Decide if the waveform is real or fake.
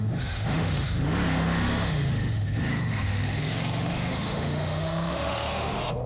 fake